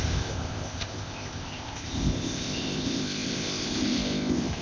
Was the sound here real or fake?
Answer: fake